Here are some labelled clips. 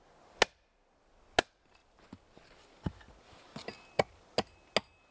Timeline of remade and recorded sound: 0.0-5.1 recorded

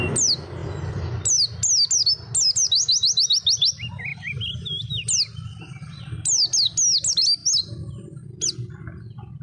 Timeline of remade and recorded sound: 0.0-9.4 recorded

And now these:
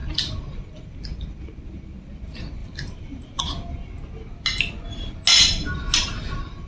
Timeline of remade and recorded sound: 0.0-2.6 recorded; 2.6-3.4 remade; 3.4-6.7 recorded